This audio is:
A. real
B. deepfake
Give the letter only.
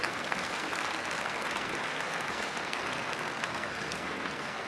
B